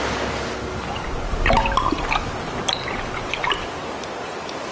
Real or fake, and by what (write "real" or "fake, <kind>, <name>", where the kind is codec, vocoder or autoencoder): real